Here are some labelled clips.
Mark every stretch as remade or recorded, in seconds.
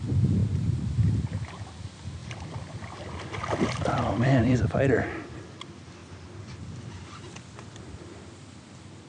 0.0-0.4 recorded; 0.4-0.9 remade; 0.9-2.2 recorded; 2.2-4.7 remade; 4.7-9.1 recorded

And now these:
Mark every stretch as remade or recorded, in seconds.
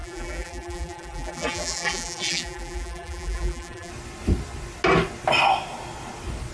0.0-3.9 remade; 3.9-6.5 recorded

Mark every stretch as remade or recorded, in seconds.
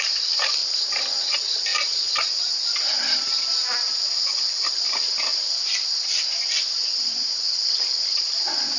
0.0-0.6 remade; 0.6-1.2 recorded; 1.2-3.7 remade; 3.7-7.8 recorded; 7.8-8.8 remade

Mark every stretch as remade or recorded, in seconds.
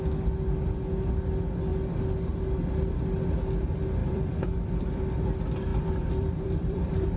0.0-4.0 recorded; 4.0-5.0 remade; 5.0-5.7 recorded; 5.7-6.8 remade; 6.8-7.2 recorded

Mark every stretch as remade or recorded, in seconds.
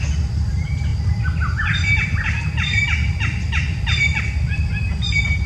0.0-5.5 recorded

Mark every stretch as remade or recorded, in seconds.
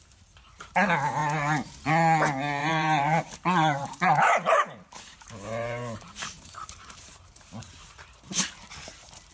0.0-2.6 recorded; 2.6-7.2 remade; 7.2-9.3 recorded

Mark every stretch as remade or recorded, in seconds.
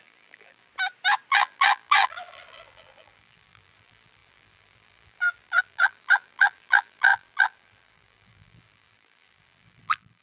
0.0-0.7 remade; 0.7-1.3 recorded; 1.3-10.2 remade